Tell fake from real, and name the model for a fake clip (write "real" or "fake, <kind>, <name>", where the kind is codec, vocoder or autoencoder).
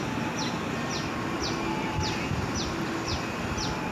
real